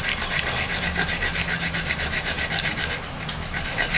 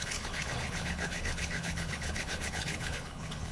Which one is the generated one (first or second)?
second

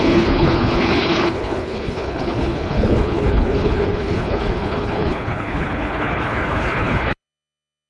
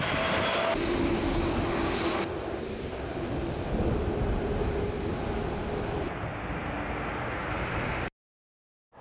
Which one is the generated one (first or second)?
first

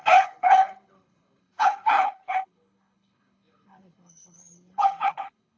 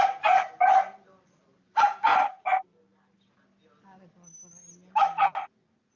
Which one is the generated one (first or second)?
first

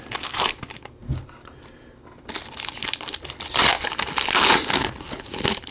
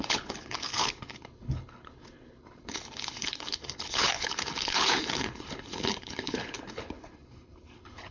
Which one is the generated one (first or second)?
second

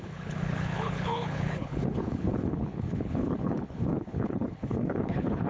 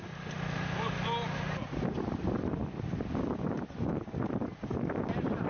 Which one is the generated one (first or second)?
first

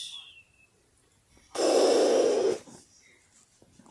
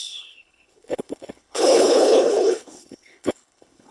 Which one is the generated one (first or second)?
second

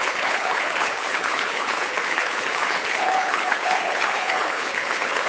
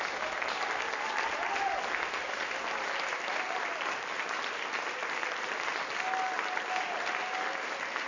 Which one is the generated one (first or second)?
first